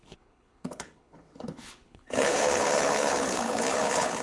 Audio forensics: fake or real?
fake